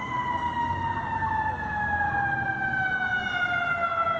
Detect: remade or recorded recorded